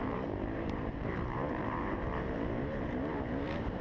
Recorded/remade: remade